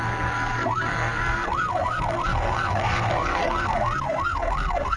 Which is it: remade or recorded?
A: remade